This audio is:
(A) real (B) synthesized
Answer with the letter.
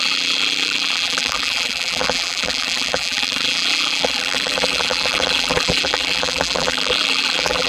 B